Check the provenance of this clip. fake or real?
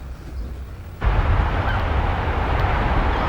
real